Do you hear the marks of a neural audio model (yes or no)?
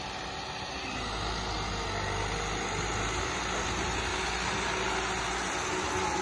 no